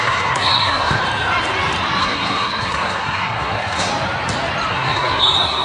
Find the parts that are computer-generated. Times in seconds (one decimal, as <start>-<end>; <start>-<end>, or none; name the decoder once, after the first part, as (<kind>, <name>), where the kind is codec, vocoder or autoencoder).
0.0-1.0 (codec, SNAC); 2.0-3.9; 4.7-5.6